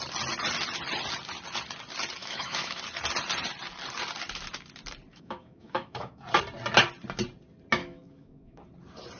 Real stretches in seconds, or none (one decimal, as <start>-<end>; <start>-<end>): 0.0-2.2; 2.8-5.1; 6.2-7.8; 8.6-9.2

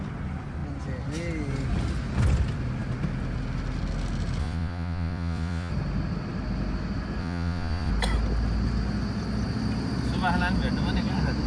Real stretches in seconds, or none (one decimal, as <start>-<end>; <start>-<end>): 0.0-4.4; 5.7-7.2; 7.9-11.5

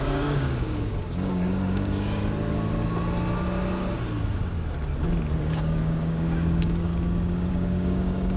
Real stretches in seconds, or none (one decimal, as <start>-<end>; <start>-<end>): 2.2-5.4; 6.9-7.5

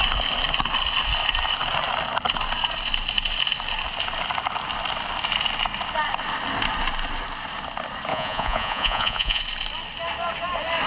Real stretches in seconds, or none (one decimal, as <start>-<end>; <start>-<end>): 0.0-8.1; 9.4-10.9